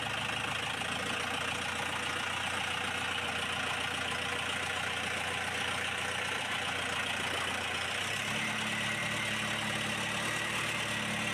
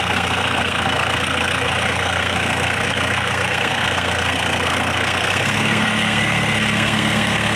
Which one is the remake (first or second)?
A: second